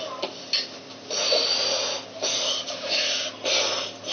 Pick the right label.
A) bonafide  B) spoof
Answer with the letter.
A